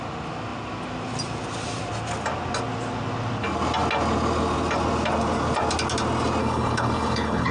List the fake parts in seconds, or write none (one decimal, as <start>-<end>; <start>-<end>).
6.4-7.5